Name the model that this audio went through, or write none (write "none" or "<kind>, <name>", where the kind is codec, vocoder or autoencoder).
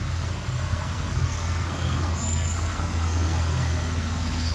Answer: codec, SNAC